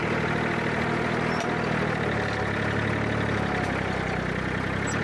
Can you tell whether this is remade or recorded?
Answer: recorded